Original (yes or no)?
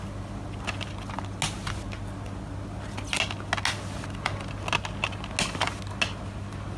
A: yes